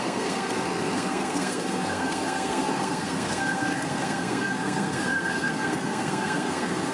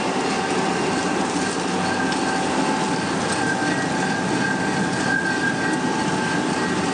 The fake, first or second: first